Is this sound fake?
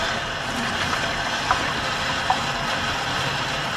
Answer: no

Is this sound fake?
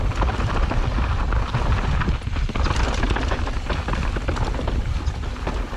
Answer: no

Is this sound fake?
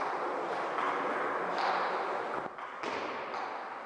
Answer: no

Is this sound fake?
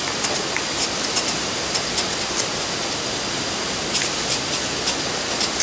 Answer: no